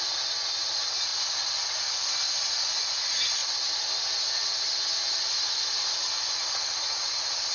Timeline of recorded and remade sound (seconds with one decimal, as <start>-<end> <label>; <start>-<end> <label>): 0.0-7.5 recorded